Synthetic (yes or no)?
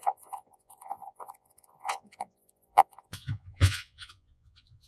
yes